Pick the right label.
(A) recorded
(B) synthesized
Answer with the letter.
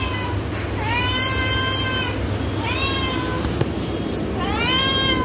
A